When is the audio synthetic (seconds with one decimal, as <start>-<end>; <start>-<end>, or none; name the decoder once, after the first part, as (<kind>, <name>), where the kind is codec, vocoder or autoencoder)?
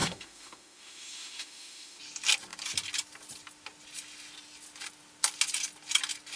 0.0-2.0 (autoencoder, DAC-VAE)